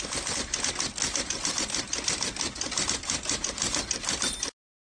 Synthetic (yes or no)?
no